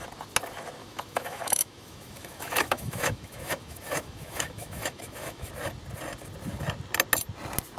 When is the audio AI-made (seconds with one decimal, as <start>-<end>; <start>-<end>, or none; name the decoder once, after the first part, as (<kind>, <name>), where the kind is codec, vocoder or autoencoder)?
0.8-5.5 (autoencoder, DAC-VAE)